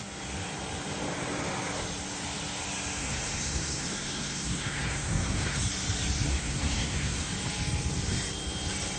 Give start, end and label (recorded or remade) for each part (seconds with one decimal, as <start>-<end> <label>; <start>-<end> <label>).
0.0-3.0 recorded; 3.0-5.6 remade; 5.6-6.3 recorded; 6.3-7.3 remade; 7.3-9.0 recorded